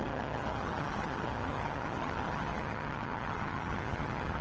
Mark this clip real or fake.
fake